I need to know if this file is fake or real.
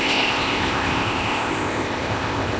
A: fake